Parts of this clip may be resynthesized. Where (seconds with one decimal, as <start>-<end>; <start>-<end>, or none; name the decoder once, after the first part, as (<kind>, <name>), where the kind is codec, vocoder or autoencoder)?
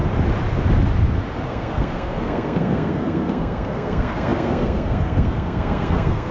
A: 1.5-6.3 (codec, SNAC)